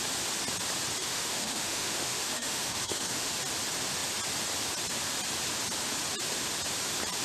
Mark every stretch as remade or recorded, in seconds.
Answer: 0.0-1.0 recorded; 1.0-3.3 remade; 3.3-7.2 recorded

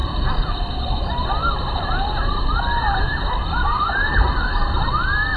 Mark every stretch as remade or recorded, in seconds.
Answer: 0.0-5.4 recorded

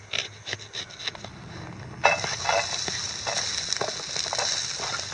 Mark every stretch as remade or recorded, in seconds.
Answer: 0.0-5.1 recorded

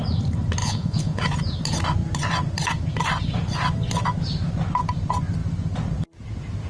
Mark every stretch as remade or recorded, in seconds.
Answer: 0.0-0.6 recorded; 0.6-1.2 remade; 1.2-6.7 recorded